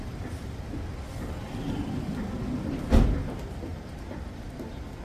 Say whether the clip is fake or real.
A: real